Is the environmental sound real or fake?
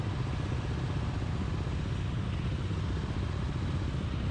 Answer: real